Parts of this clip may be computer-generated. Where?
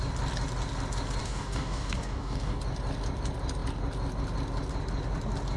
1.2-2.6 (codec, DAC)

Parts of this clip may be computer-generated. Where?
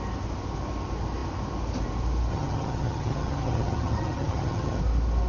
2.3-4.8 (vocoder, HiFi-GAN)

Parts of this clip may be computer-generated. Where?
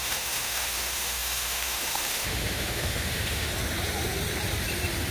0.0-3.5 (autoencoder, DAC-VAE)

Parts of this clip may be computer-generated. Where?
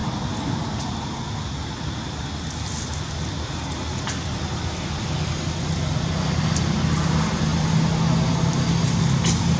none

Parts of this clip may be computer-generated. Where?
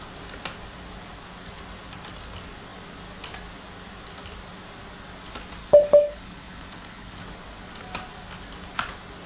5.6-7.2 (codec, HILCodec)